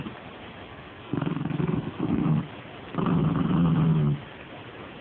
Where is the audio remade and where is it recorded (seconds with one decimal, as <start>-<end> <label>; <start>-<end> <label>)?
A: 0.0-0.7 recorded; 0.7-2.4 remade; 2.4-5.0 recorded